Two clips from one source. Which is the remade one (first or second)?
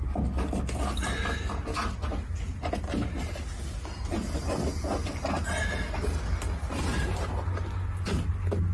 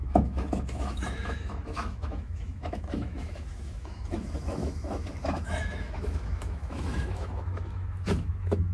second